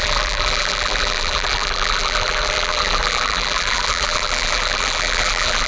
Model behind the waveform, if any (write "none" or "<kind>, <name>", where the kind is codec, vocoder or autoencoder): vocoder, BigVGAN v2